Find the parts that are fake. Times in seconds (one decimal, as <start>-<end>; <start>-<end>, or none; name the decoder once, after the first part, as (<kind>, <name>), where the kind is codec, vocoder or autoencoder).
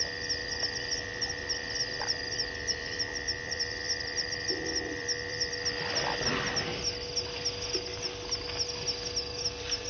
0.4-5.5 (vocoder, BigVGAN v2)